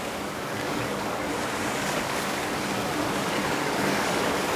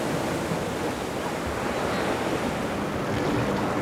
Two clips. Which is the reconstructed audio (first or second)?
first